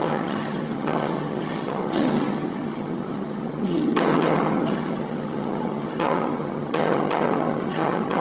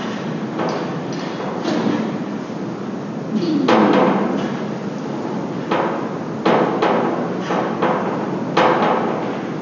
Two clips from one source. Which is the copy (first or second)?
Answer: first